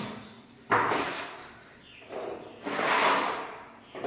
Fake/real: real